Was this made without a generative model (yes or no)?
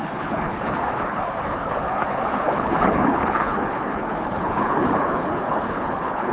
no